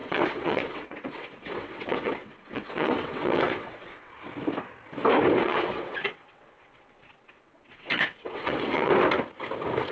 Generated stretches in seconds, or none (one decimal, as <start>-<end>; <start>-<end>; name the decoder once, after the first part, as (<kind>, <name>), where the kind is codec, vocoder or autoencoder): 0.0-4.1 (vocoder, WaveNeXt); 5.4-8.9